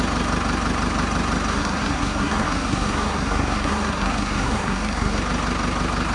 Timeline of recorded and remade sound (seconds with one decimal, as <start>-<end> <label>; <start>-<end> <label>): 0.0-1.5 recorded; 1.5-5.2 remade; 5.2-6.1 recorded